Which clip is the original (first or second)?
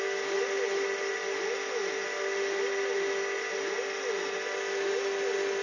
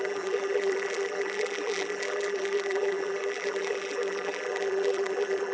first